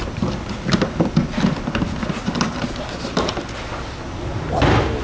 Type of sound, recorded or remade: recorded